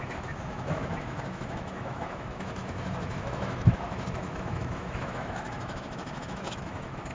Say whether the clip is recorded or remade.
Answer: remade